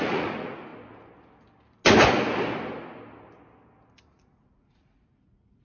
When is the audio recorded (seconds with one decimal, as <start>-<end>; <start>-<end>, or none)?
0.7-4.1